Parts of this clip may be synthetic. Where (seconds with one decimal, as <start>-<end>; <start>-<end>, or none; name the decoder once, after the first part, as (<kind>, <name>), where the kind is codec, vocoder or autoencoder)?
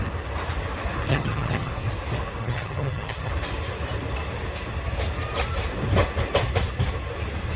1.1-1.7 (vocoder, HiFi-GAN); 2.4-3.3